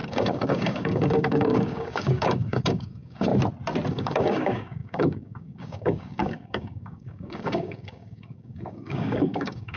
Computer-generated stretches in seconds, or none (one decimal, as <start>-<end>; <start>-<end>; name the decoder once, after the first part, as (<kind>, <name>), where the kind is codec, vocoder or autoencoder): 0.0-3.3 (codec, DAC); 3.9-9.8